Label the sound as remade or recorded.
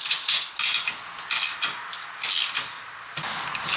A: recorded